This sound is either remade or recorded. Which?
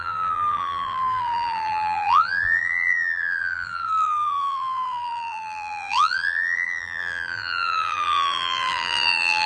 remade